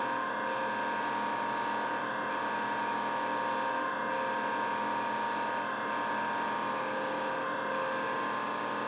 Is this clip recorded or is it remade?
recorded